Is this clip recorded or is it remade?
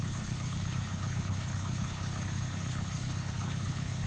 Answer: remade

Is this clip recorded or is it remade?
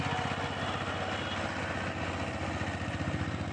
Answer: recorded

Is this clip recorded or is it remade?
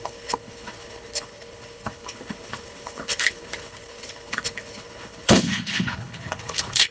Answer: remade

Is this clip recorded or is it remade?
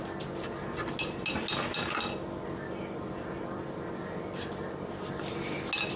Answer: recorded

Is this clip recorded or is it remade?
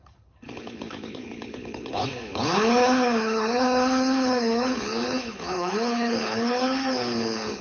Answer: remade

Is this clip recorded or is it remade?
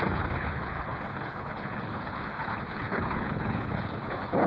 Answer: remade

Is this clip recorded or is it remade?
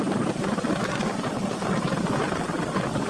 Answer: recorded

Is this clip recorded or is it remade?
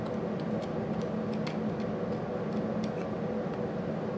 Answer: recorded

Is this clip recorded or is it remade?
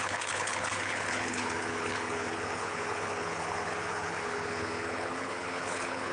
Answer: remade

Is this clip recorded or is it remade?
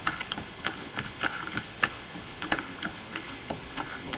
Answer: remade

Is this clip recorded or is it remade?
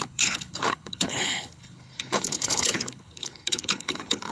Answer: remade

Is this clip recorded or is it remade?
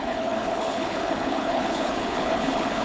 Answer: remade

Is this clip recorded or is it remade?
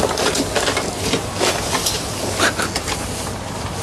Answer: recorded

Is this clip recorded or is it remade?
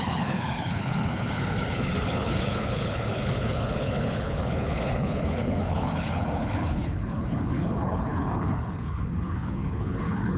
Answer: remade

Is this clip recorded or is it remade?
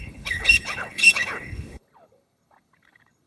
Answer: remade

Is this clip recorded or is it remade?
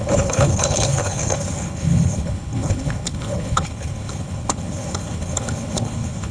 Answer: remade